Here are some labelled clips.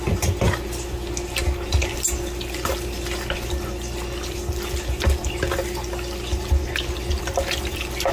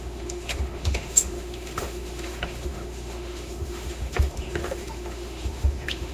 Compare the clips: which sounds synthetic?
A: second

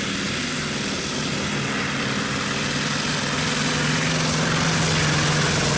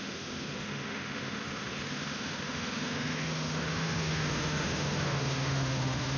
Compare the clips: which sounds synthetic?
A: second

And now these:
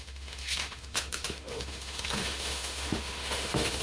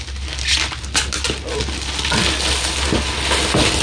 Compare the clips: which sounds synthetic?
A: first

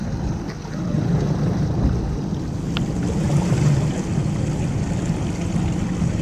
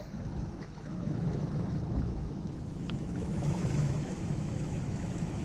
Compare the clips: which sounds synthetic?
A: second